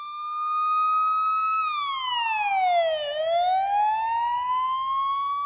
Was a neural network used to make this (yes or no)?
no